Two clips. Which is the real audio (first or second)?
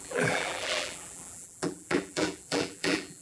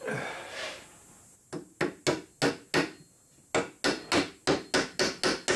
second